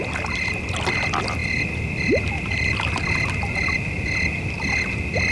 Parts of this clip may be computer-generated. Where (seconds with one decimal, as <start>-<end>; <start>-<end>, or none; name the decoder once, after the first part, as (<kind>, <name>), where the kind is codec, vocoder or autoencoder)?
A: none